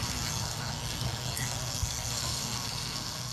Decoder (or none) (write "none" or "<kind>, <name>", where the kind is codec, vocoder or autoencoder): codec, SNAC